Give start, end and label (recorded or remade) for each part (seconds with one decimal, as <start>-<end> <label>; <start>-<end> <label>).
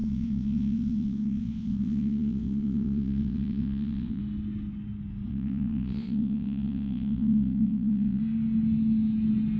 0.0-4.2 remade; 4.2-5.3 recorded; 5.3-8.2 remade; 8.2-9.6 recorded